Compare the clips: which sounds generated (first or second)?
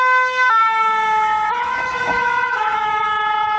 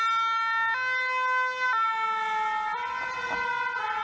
first